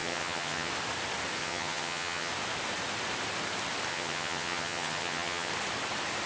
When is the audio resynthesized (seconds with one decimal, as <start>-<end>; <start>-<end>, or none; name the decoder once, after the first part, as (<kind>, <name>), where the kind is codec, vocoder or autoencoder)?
0.0-0.7 (vocoder, HiFi-GAN); 1.4-2.3; 3.9-5.5